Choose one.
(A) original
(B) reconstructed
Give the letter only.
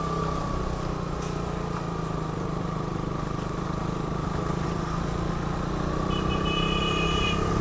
A